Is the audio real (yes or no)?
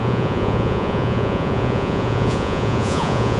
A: no